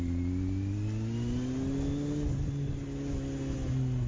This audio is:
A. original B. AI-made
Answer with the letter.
A